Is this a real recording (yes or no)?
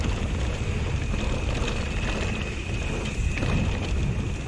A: yes